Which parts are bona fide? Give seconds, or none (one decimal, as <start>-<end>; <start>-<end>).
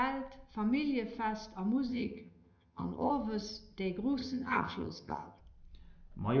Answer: 0.0-1.9; 3.1-4.2; 5.4-6.4